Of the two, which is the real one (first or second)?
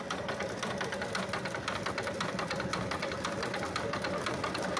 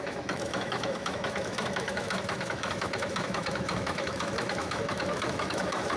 first